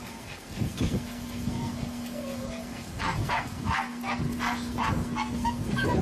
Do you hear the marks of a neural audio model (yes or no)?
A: yes